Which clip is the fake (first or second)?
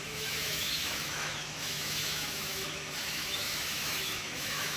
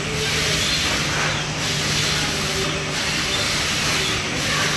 first